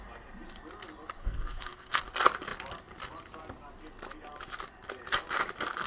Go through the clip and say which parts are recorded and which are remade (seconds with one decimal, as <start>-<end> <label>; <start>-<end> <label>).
0.0-1.2 recorded; 1.2-2.0 remade; 2.0-5.9 recorded

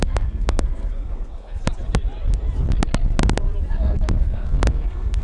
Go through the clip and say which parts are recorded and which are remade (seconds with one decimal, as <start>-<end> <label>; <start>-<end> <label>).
0.0-1.6 remade; 1.6-3.7 recorded; 3.7-5.2 remade

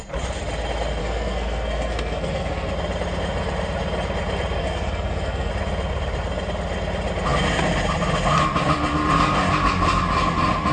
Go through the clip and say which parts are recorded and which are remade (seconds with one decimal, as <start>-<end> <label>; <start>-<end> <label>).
0.0-1.0 recorded; 1.0-2.7 remade; 2.7-4.6 recorded; 4.6-5.5 remade; 5.5-10.7 recorded

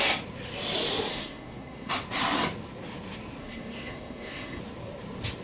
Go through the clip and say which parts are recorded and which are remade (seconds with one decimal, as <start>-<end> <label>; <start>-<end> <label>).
0.0-1.1 recorded; 1.1-1.9 remade; 1.9-3.4 recorded; 3.4-4.6 remade; 4.6-5.4 recorded

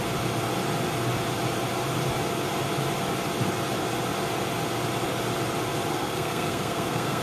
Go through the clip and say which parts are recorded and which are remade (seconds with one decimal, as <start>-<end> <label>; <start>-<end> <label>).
0.0-5.9 recorded; 5.9-7.2 remade